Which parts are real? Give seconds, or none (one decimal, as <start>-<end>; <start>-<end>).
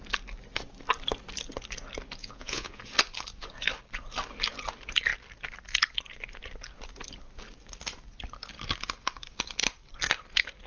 0.0-2.2; 2.8-10.7